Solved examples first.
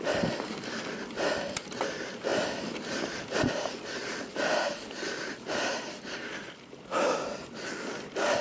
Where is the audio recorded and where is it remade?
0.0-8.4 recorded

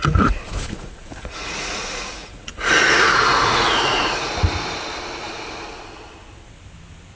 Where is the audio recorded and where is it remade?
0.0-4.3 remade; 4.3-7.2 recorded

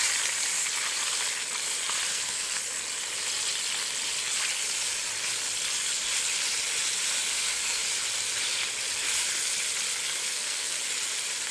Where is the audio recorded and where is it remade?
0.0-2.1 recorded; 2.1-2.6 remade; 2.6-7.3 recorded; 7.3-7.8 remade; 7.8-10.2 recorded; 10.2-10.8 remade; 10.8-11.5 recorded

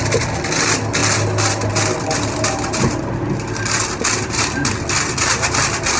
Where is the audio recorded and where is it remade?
0.0-6.0 recorded